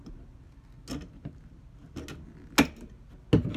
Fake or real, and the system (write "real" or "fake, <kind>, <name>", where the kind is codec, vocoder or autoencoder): real